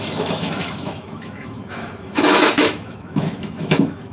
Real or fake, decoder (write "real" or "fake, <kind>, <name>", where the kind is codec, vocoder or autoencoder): fake, autoencoder, DAC-VAE